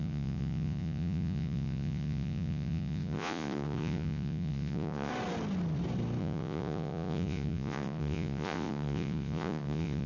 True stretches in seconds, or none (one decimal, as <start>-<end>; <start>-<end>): 5.1-6.2